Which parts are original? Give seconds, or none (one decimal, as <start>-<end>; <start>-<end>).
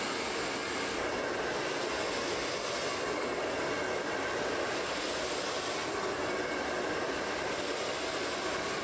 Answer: 0.0-8.8